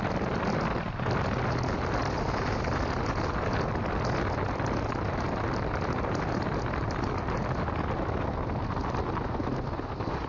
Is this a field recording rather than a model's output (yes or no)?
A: yes